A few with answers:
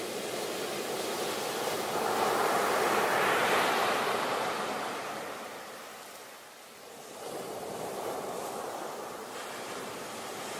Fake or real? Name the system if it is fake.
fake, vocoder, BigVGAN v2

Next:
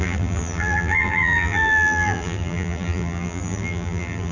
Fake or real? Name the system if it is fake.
fake, vocoder, BigVGAN v2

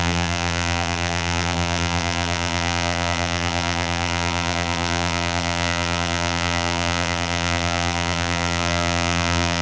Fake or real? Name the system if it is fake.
fake, vocoder, BigVGAN v2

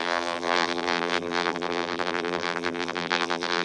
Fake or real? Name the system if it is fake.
fake, vocoder, BigVGAN v2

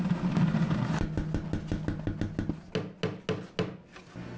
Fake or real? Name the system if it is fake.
real